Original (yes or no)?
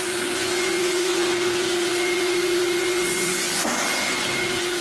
no